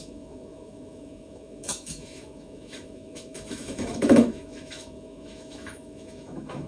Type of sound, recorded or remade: remade